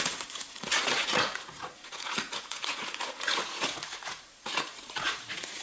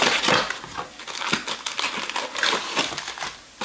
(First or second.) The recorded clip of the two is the second